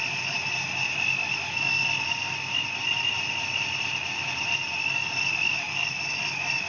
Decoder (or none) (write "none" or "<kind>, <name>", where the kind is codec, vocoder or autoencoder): none